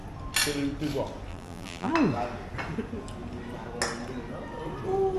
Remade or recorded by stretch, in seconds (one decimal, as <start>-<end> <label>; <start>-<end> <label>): 0.0-1.3 recorded; 1.3-1.9 remade; 1.9-5.2 recorded